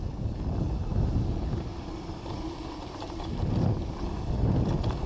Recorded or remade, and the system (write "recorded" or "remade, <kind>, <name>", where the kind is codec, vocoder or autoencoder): recorded